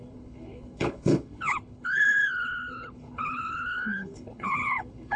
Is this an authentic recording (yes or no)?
no